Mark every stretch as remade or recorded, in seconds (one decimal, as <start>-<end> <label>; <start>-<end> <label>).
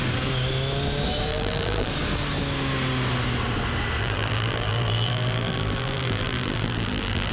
0.0-1.3 recorded; 1.3-1.9 remade; 1.9-4.0 recorded; 4.0-7.3 remade